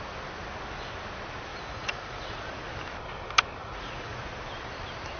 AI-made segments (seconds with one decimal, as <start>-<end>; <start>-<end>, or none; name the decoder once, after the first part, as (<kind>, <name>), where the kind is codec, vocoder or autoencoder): 1.5-2.5 (vocoder, Vocos); 3.6-4.2